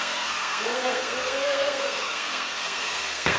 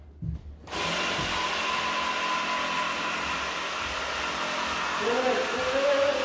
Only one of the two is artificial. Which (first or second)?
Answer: first